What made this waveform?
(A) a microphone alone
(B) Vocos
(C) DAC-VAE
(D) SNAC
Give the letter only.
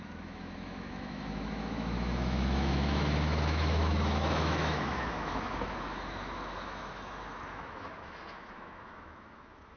C